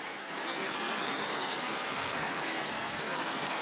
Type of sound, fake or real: fake